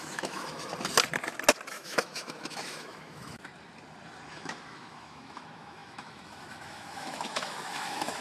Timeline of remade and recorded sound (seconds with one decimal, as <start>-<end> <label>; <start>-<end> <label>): 0.0-0.7 remade; 0.7-1.7 recorded; 1.7-3.5 remade; 3.5-4.3 recorded; 4.3-8.2 remade